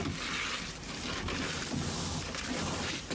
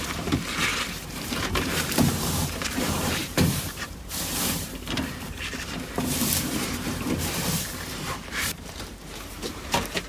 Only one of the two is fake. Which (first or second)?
second